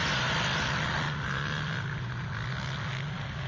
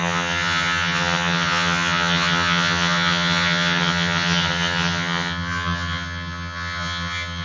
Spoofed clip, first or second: second